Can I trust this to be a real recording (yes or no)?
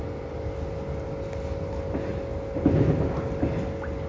yes